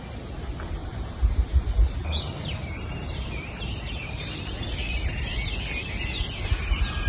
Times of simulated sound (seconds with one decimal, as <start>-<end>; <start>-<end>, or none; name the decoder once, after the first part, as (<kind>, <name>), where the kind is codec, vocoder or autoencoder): 0.8-4.4 (vocoder, BigVGAN v2)